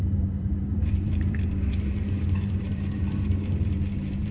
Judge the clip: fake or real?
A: fake